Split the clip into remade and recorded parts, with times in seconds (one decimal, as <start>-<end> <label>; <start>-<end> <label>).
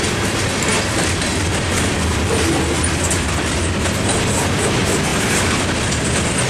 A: 0.0-5.1 recorded; 5.1-5.6 remade; 5.6-6.5 recorded